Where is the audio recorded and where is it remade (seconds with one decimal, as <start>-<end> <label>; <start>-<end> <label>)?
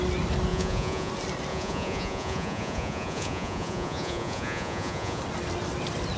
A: 0.0-0.5 recorded; 0.5-1.1 remade; 1.1-1.5 recorded; 1.5-5.2 remade; 5.2-6.2 recorded